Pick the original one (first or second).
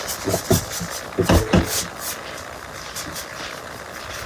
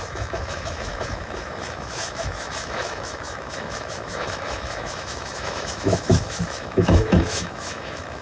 first